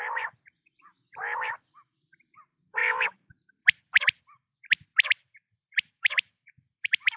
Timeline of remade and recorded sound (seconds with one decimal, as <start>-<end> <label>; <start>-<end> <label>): 0.0-4.5 remade; 4.5-5.1 recorded; 5.1-7.2 remade